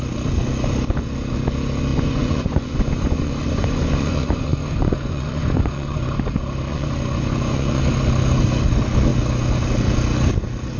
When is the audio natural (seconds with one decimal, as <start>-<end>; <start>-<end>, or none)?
0.0-1.9; 6.2-6.7; 7.8-10.8